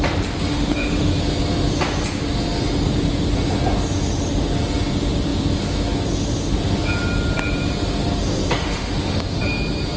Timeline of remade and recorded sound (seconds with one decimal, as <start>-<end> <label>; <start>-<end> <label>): 0.0-0.5 recorded; 0.5-1.1 remade; 1.1-8.6 recorded; 8.6-9.4 remade; 9.4-10.0 recorded